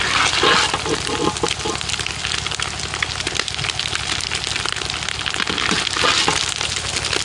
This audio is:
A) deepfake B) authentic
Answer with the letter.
B